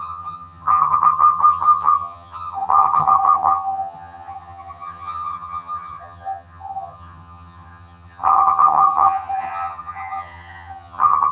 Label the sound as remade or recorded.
remade